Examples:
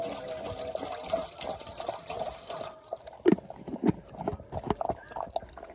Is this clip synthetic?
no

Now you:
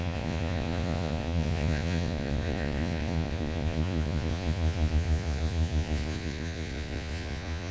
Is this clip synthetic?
yes